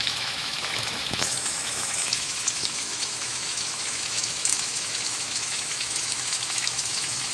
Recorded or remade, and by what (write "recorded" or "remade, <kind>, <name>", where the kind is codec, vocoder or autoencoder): remade, autoencoder, DAC-VAE